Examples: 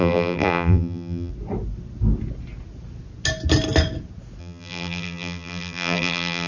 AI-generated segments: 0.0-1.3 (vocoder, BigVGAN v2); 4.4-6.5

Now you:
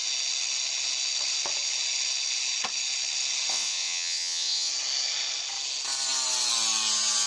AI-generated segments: 3.5-4.7 (vocoder, WaveNeXt)

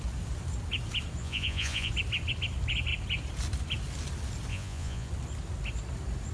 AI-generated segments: 1.2-1.9 (vocoder, Vocos); 4.5-5.1

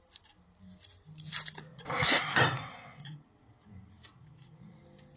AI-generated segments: 1.7-4.8 (vocoder, WaveNeXt)

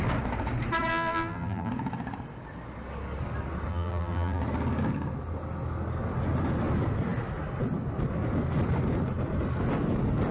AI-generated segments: 0.9-1.7 (vocoder, BigVGAN v2); 3.7-4.4

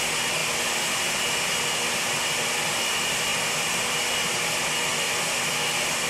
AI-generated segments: none